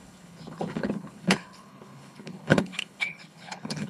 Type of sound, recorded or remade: remade